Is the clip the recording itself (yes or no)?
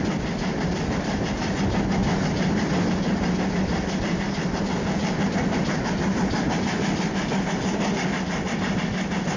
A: yes